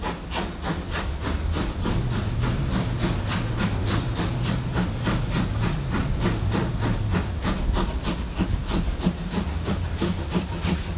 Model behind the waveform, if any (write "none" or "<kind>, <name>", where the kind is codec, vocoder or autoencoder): none